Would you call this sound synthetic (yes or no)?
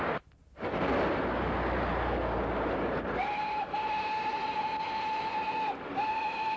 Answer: no